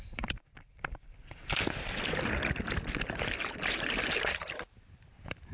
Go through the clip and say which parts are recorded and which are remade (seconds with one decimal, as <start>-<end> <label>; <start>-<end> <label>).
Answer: 0.0-0.9 remade; 0.9-3.7 recorded; 3.7-5.5 remade